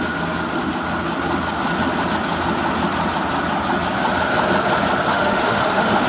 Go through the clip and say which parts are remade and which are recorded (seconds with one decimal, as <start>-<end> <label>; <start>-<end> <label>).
0.0-5.1 recorded; 5.1-6.1 remade